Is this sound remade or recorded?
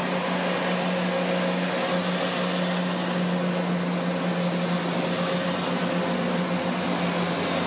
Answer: recorded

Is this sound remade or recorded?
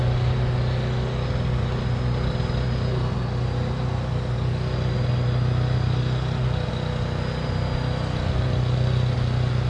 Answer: recorded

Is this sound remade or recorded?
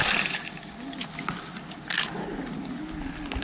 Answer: recorded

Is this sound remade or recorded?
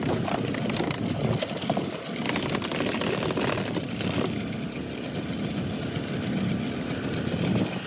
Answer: recorded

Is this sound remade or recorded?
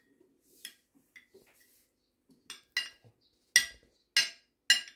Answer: recorded